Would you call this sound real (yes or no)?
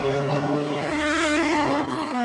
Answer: no